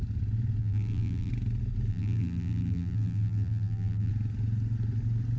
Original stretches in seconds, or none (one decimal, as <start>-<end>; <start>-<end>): 0.0-0.6; 1.3-1.9; 4.1-5.4